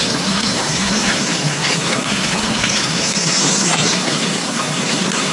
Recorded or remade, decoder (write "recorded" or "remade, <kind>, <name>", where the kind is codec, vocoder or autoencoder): remade, codec, SNAC